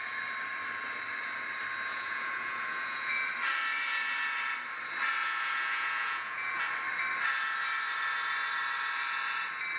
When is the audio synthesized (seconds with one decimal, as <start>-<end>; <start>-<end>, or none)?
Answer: 1.9-3.3; 5.2-6.6